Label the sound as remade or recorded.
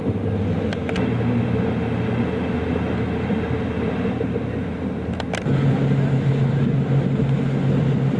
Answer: recorded